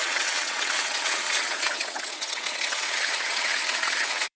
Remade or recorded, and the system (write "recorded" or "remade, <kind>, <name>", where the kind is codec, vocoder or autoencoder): remade, vocoder, WaveNeXt